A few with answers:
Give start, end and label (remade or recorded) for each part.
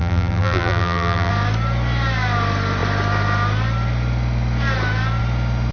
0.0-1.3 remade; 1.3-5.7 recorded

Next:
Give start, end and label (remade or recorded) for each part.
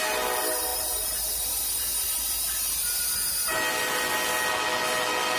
0.0-0.7 recorded; 0.7-1.2 remade; 1.2-5.4 recorded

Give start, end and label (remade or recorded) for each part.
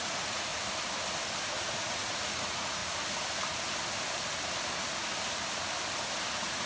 0.0-0.5 remade; 0.5-1.6 recorded; 1.6-2.8 remade; 2.8-6.3 recorded; 6.3-6.7 remade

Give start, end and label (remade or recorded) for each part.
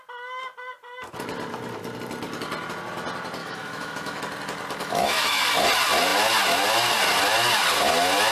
0.0-3.4 recorded; 3.4-4.2 remade; 4.2-4.8 recorded; 4.8-5.4 remade; 5.4-8.3 recorded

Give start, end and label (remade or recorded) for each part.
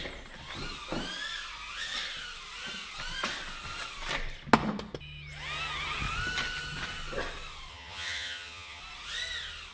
0.0-7.7 recorded; 7.7-8.8 remade; 8.8-9.7 recorded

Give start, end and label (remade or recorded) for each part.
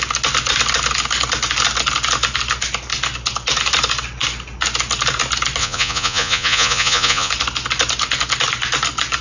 0.0-5.6 recorded; 5.6-7.3 remade; 7.3-9.2 recorded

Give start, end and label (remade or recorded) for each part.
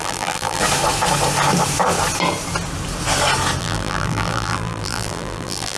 0.0-0.6 remade; 0.6-3.6 recorded; 3.6-5.8 remade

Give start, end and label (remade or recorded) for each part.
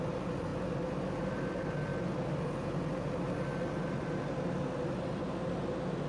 0.0-6.1 recorded